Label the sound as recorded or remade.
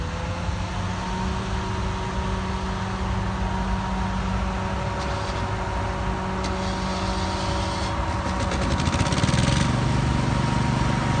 recorded